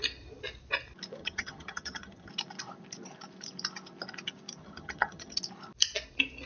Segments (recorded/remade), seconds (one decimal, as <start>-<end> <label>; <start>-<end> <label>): 0.0-1.2 recorded; 1.2-2.3 remade; 2.3-4.6 recorded; 4.6-5.4 remade; 5.4-6.5 recorded